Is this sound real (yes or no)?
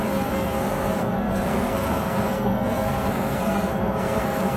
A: no